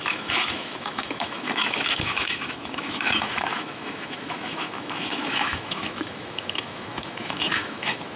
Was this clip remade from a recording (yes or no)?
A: yes